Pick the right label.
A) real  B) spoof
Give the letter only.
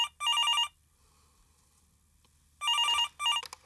A